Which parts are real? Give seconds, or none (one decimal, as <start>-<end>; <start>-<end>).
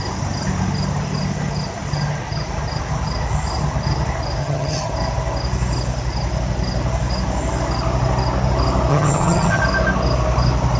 0.0-4.4; 4.9-8.9; 9.6-10.8